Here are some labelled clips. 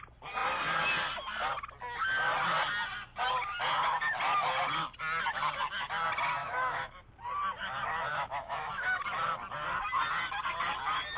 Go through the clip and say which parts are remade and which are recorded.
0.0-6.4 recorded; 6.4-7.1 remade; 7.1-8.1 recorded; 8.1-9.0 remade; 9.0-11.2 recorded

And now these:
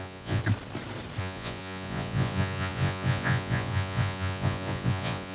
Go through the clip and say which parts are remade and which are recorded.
0.0-0.4 remade; 0.4-1.2 recorded; 1.2-5.3 remade

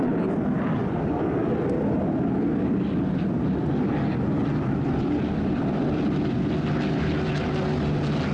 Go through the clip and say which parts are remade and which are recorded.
0.0-0.8 recorded; 0.8-1.4 remade; 1.4-8.3 recorded

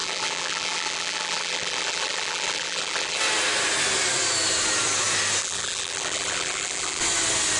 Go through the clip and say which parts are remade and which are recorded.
0.0-3.2 remade; 3.2-5.4 recorded; 5.4-7.0 remade; 7.0-7.6 recorded